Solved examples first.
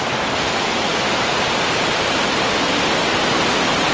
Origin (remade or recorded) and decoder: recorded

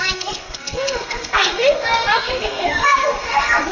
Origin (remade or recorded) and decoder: remade, codec, SNAC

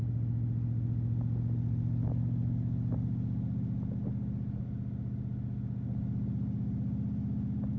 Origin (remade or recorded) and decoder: recorded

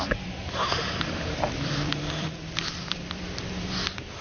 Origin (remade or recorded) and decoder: remade, vocoder, BigVGAN v2